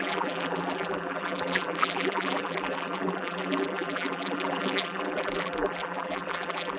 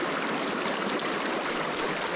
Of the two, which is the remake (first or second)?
first